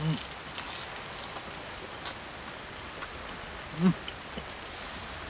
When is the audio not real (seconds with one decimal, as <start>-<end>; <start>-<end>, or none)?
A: none